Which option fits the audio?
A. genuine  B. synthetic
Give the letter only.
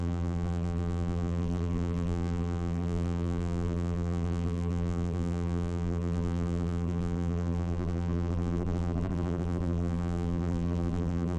B